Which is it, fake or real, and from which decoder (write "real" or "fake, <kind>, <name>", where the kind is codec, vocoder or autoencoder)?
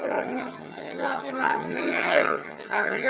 fake, vocoder, HiFi-GAN